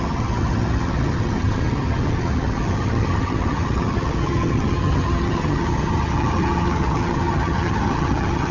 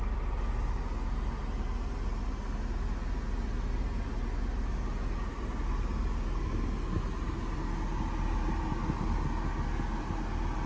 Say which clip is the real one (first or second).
second